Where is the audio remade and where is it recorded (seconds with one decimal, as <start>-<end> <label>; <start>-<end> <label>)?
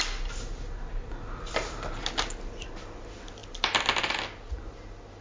0.0-5.2 recorded